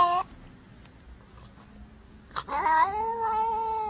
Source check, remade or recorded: recorded